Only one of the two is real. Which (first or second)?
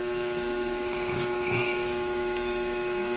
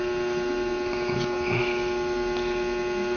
second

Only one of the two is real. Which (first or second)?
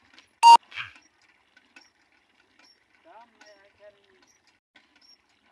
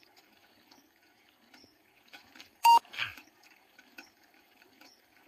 first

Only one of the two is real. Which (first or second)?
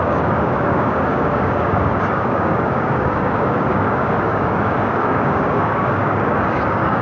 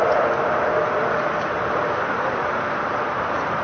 second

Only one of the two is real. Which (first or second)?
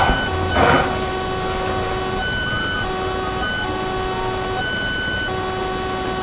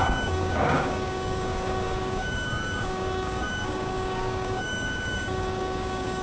first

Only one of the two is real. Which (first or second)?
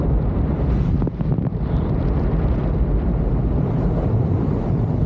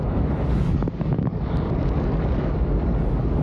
first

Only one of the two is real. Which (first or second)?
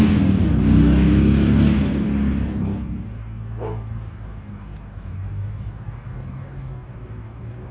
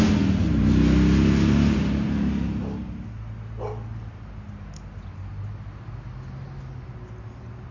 second